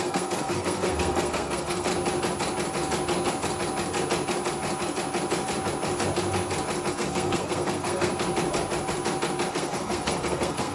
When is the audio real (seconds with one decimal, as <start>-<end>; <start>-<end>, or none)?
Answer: 1.9-6.9; 8.1-9.5